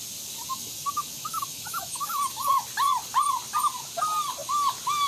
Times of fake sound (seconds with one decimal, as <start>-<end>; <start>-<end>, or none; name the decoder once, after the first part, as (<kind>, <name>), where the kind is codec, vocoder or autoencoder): 0.5-2.6 (autoencoder, DAC-VAE)